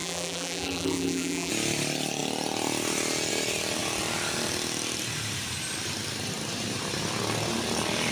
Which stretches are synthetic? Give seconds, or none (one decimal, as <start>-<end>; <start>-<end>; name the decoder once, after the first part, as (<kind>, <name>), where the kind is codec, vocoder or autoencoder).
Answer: 0.0-1.5 (vocoder, BigVGAN v2)